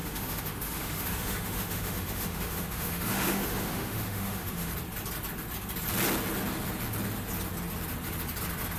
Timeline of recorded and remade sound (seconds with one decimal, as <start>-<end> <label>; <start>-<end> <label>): 0.0-4.7 remade; 4.7-8.8 recorded